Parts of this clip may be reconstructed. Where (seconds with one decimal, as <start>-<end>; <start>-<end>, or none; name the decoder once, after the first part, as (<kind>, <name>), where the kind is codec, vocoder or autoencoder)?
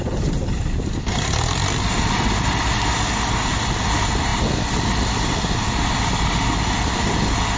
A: none